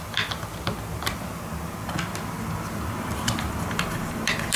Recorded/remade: recorded